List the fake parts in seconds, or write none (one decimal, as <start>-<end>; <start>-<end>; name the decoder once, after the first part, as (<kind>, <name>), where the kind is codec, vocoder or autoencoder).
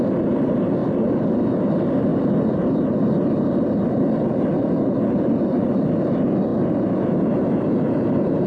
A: 0.8-1.5 (vocoder, BigVGAN v2); 2.1-4.8; 6.5-7.1